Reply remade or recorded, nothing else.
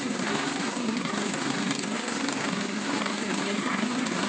remade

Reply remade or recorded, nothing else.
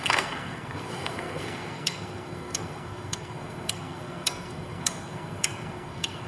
remade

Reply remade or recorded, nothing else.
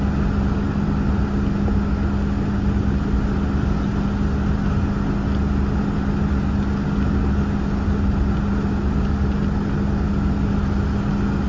recorded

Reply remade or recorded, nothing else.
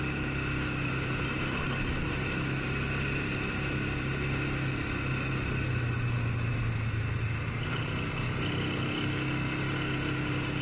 recorded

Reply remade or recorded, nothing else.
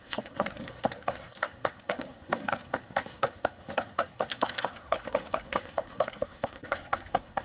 remade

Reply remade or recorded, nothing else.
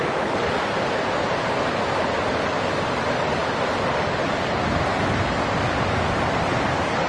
recorded